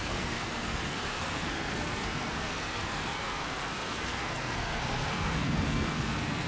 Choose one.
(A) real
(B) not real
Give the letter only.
B